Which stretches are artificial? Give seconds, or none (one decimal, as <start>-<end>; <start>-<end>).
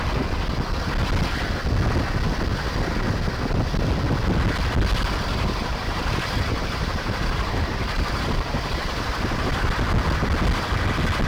5.3-9.7